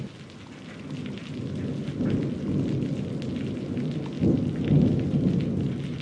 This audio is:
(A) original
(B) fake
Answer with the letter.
A